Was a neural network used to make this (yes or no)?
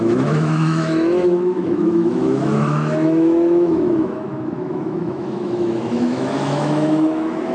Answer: yes